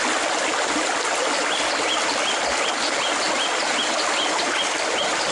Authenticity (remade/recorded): recorded